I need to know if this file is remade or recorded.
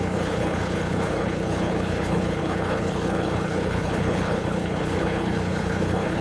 remade